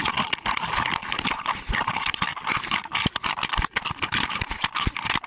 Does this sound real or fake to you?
real